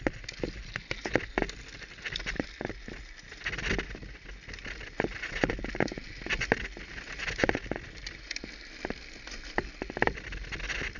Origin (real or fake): real